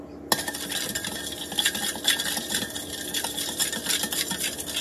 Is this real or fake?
real